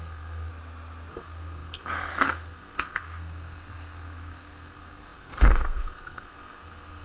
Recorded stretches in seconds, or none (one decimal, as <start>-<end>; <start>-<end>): 0.5-1.1